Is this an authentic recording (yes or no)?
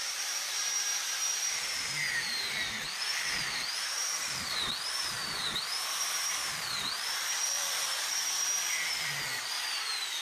no